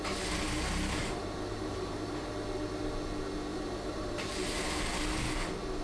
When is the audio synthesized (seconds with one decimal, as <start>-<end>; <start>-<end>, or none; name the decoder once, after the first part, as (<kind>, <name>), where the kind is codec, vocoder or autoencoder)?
1.0-2.3 (vocoder, BigVGAN v2); 3.5-4.6